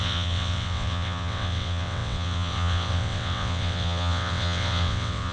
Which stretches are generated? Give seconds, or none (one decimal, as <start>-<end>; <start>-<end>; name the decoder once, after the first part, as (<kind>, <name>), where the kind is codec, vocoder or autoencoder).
0.0-5.3 (vocoder, WaveNeXt)